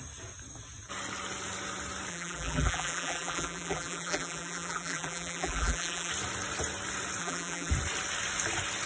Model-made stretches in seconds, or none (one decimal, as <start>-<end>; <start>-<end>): 2.1-6.1; 7.2-7.7